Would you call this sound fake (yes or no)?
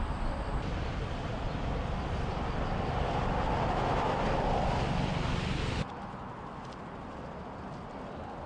no